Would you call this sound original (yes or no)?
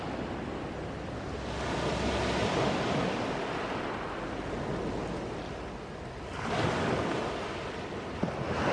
yes